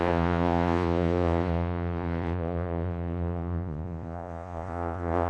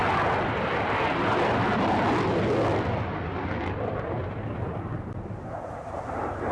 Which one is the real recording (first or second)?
second